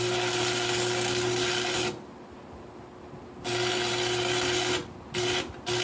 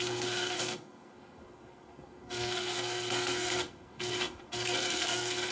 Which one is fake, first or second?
second